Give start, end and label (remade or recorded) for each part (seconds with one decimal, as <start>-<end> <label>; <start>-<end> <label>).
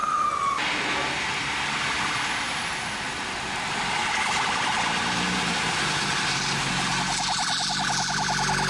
0.0-8.7 recorded